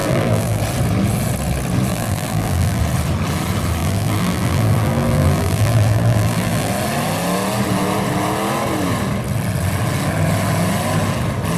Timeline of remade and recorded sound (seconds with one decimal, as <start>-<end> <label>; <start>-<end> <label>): 0.0-0.6 remade; 0.6-1.9 recorded; 1.9-2.8 remade; 2.8-3.8 recorded; 3.8-6.7 remade; 6.7-11.6 recorded